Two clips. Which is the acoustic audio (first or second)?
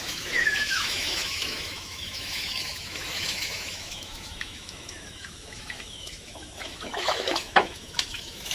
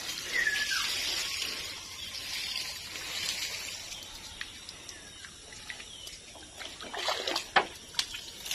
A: second